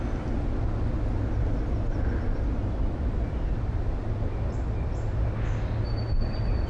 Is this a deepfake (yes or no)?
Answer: no